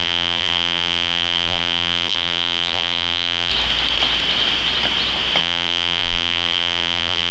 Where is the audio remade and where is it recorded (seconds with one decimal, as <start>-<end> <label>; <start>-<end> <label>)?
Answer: 0.0-3.5 remade; 3.5-5.4 recorded; 5.4-7.3 remade